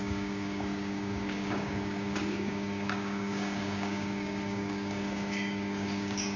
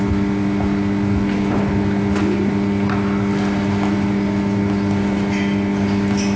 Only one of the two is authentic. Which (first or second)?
second